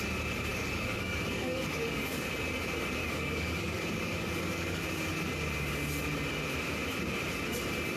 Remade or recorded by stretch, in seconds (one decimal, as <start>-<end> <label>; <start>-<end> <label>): 0.0-0.5 recorded; 0.5-2.3 remade; 2.3-3.0 recorded; 3.0-4.8 remade; 4.8-8.0 recorded